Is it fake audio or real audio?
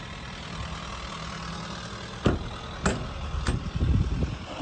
real